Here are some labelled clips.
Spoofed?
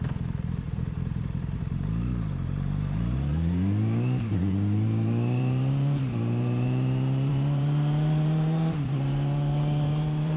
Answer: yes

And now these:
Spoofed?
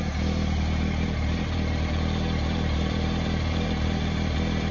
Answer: yes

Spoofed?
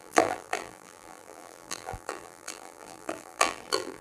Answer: yes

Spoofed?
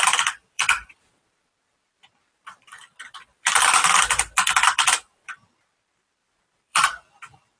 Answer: yes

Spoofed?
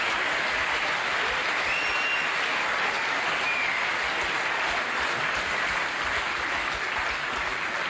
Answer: no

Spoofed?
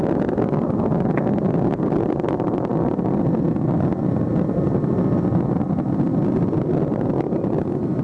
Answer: yes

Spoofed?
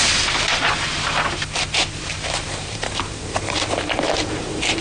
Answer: yes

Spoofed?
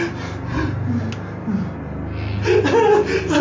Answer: no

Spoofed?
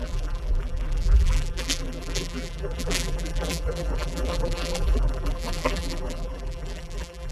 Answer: yes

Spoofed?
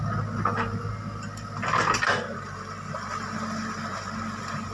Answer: no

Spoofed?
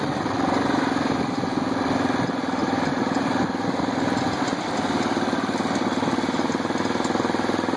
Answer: no